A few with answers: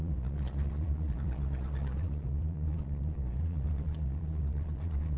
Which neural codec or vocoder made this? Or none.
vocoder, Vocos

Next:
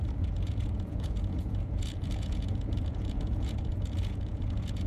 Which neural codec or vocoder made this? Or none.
vocoder, Vocos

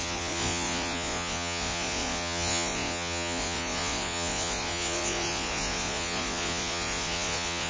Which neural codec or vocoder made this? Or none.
vocoder, Vocos